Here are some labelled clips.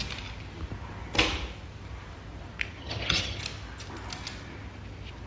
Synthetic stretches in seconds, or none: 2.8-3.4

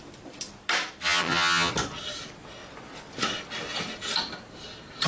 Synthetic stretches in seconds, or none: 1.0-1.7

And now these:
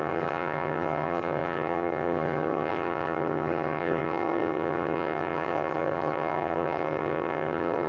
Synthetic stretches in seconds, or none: 0.0-7.9